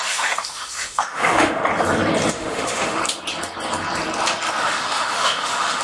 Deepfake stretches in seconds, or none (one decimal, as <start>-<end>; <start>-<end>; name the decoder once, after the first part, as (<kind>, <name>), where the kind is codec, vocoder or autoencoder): 0.0-1.6 (autoencoder, DAC-VAE); 2.3-3.0; 4.6-5.8